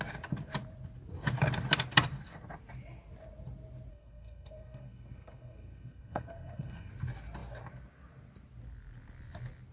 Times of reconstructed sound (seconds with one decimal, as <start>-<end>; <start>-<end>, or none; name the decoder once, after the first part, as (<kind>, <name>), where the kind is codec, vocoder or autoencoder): 3.9-6.9 (codec, SNAC)